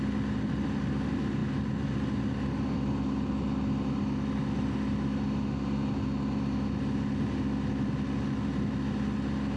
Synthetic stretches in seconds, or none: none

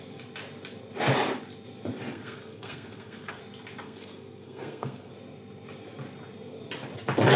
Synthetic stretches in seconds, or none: 2.1-3.4 (codec, SNAC); 3.8-5.1

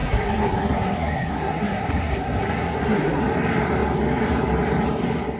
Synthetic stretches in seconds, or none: 0.0-3.2 (codec, SNAC)